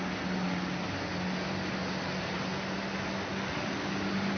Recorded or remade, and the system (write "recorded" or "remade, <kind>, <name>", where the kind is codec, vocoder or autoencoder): recorded